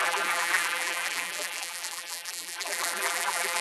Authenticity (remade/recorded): remade